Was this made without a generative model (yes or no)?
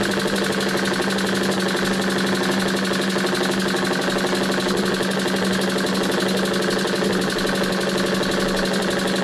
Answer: yes